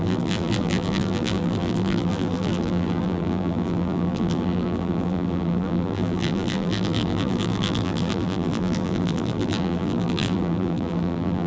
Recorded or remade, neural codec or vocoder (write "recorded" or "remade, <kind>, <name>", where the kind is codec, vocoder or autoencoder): remade, vocoder, BigVGAN v2